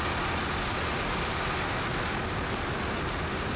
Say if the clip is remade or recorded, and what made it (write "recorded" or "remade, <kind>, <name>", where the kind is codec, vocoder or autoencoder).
recorded